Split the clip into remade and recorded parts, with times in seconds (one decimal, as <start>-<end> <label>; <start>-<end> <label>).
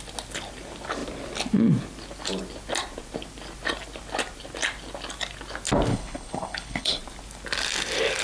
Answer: 0.0-5.9 recorded; 5.9-7.0 remade; 7.0-8.2 recorded